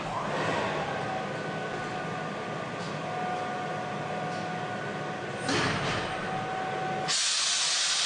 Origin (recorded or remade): recorded